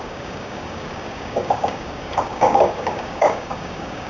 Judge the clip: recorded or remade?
remade